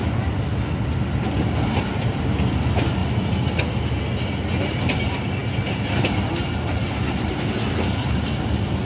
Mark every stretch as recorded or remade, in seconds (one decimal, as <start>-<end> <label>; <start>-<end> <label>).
0.0-8.8 recorded